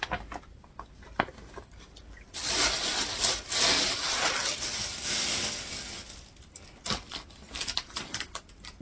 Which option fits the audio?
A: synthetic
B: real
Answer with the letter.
B